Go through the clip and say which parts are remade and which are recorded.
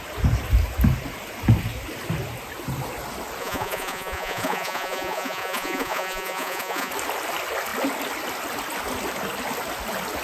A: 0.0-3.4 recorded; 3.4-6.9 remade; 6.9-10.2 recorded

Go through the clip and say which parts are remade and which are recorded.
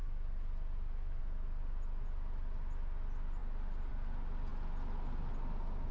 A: 0.0-5.9 recorded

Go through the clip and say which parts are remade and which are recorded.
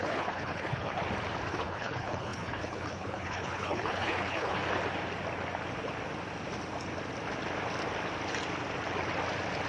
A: 0.0-1.0 remade; 1.0-1.5 recorded; 1.5-4.6 remade; 4.6-9.7 recorded